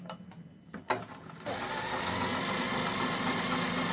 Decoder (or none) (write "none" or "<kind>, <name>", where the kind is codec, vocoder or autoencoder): none